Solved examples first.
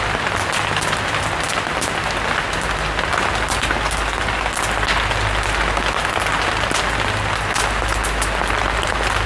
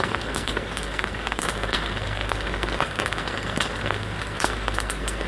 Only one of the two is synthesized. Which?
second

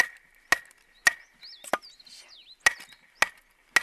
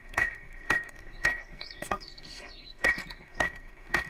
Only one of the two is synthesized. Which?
second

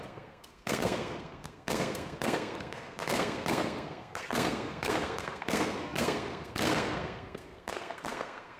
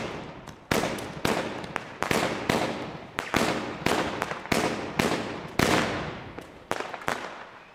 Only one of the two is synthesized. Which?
first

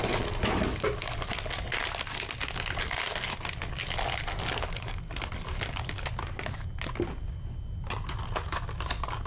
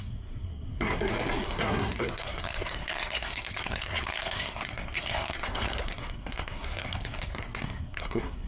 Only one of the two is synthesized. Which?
second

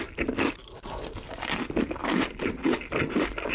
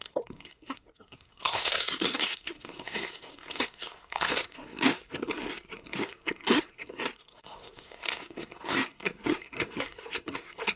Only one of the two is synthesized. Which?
second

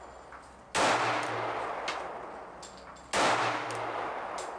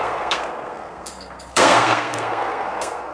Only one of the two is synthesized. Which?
second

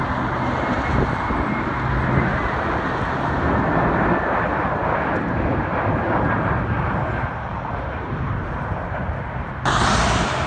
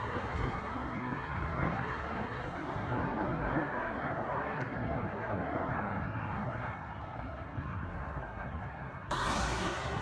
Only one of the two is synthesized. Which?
second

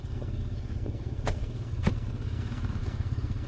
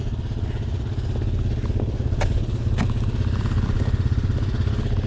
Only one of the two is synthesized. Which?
first